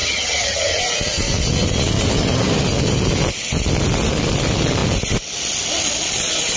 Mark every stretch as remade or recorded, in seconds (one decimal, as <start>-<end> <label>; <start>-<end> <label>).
0.0-0.8 remade; 0.8-6.6 recorded